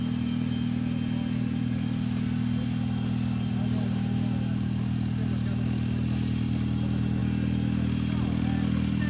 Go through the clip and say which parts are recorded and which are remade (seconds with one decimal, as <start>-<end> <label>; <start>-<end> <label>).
0.0-9.1 recorded